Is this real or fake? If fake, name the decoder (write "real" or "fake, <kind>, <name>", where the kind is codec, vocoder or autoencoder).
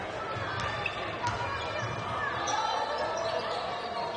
real